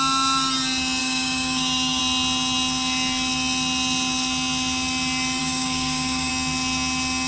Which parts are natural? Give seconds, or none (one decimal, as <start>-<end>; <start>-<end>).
0.0-1.0; 2.0-5.4; 6.3-7.3